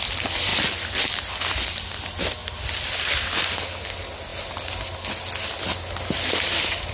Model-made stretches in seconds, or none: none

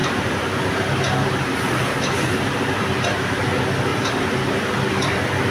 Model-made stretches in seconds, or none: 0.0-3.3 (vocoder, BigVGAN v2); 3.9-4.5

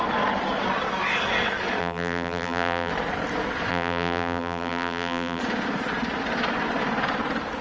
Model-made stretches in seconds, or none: 1.8-2.9 (vocoder, BigVGAN v2); 3.7-5.4

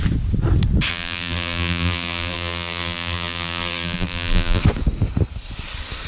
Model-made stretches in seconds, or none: 0.9-4.6 (vocoder, BigVGAN v2)

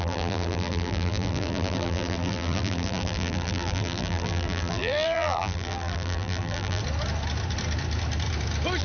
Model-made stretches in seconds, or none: 0.0-6.8 (vocoder, BigVGAN v2)